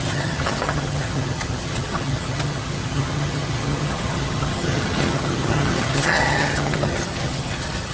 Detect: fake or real fake